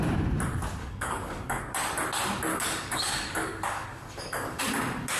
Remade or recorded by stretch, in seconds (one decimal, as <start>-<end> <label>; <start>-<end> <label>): 0.0-0.8 recorded; 0.8-1.6 remade; 1.6-2.5 recorded; 2.5-4.6 remade; 4.6-5.2 recorded